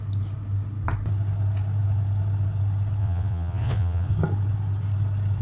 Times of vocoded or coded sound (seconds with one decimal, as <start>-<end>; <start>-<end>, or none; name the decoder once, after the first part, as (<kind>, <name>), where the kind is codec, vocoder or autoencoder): 3.0-4.1 (vocoder, Vocos)